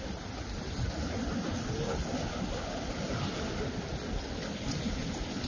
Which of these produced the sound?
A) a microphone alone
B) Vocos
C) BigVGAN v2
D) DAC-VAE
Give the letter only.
A